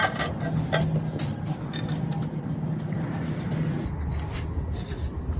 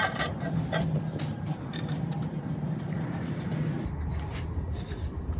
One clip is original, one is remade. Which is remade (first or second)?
second